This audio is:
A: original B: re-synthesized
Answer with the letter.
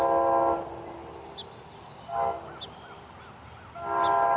A